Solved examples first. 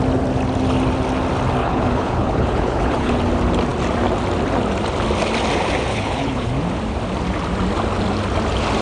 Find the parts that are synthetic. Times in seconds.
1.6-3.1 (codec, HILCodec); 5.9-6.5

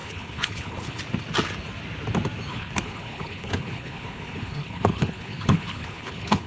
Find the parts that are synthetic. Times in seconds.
0.0-1.0 (codec, HILCodec); 2.5-6.5

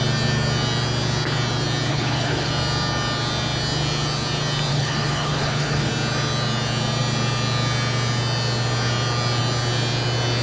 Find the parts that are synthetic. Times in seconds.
1.9-2.5 (codec, HILCodec); 4.7-5.9

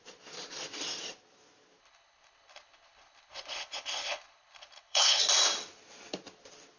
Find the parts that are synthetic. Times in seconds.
1.8-5.2 (codec, HILCodec)

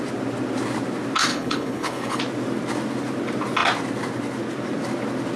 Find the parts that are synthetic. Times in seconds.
1.3-2.2 (codec, HILCodec)

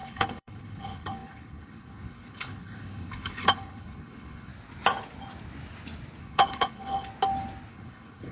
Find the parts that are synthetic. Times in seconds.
0.0-4.5 (codec, HILCodec); 6.2-7.1; 7.7-8.3

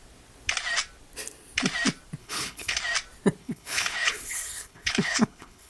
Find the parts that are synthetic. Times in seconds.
2.2-2.8 (codec, HILCodec); 3.4-5.7